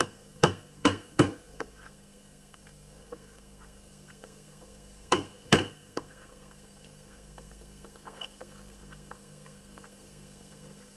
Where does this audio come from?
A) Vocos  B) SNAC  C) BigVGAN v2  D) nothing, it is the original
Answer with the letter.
B